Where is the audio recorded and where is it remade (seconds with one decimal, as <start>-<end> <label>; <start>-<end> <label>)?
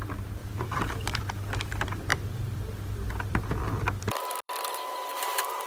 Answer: 0.0-0.4 recorded; 0.4-1.2 remade; 1.2-2.1 recorded; 2.1-5.7 remade